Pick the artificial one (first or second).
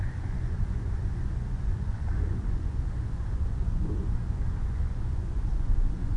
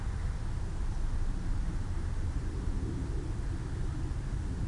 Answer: first